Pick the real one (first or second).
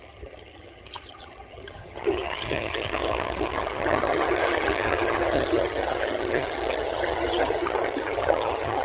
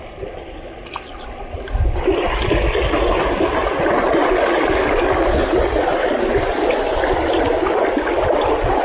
second